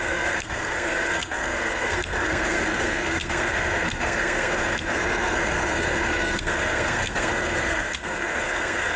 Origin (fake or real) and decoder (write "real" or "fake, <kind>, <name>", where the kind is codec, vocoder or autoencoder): fake, codec, SNAC